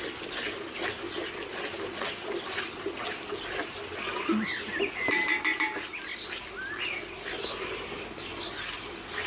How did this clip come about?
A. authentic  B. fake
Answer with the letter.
A